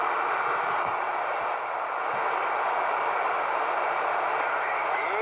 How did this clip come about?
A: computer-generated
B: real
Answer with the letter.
B